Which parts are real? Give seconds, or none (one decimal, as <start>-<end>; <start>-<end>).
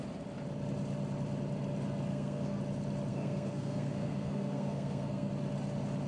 0.0-2.1; 2.6-3.1; 5.3-6.1